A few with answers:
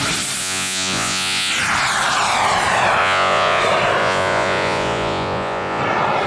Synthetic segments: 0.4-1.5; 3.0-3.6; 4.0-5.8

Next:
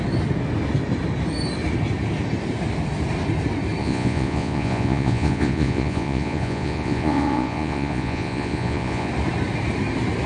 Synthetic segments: 3.8-9.1

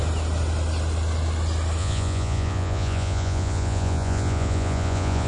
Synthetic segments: 1.8-5.3

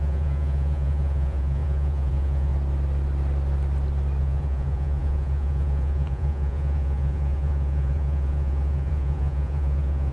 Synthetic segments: 0.0-2.5; 4.2-10.1

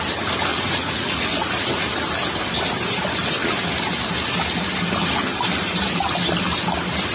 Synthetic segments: 0.5-1.2